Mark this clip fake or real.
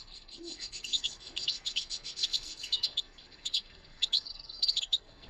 fake